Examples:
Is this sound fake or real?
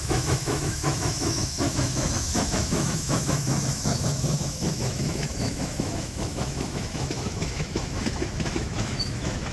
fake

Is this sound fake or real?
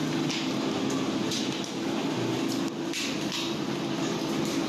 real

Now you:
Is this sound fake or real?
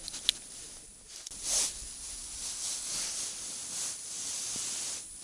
real